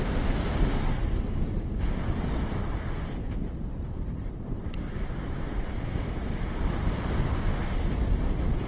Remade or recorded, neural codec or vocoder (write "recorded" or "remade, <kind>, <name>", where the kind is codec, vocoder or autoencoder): recorded